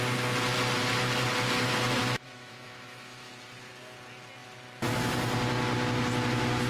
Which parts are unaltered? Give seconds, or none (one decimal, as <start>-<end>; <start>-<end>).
0.0-2.0; 3.3-6.7